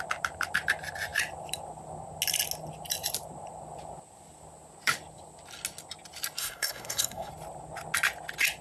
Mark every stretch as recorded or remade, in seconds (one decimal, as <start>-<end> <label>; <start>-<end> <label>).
0.0-6.4 recorded; 6.4-7.3 remade; 7.3-8.6 recorded